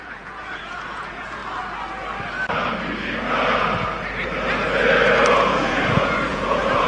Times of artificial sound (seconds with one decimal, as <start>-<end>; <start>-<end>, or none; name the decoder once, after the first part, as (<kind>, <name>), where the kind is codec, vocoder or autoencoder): 0.0-1.4 (vocoder, Vocos); 5.5-6.9